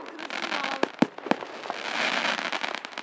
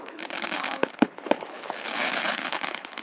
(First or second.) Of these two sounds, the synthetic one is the second